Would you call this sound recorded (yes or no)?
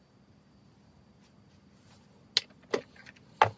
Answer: yes